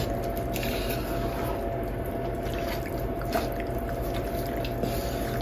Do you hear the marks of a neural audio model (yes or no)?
no